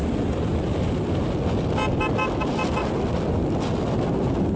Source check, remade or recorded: recorded